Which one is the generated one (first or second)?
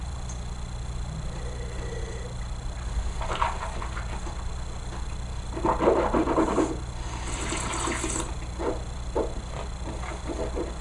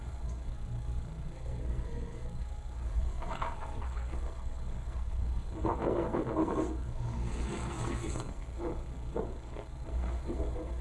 second